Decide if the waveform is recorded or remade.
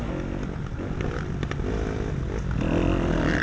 recorded